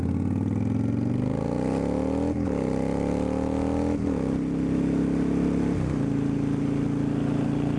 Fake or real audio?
real